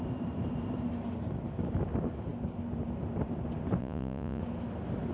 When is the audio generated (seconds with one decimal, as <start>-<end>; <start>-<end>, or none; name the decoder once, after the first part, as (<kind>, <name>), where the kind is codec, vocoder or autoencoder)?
3.8-4.4 (vocoder, Vocos)